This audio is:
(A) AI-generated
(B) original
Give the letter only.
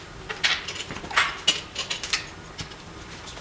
B